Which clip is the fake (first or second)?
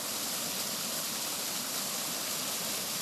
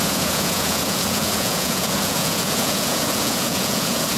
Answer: second